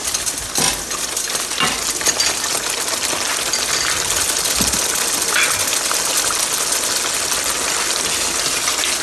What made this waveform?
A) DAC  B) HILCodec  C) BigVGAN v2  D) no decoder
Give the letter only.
D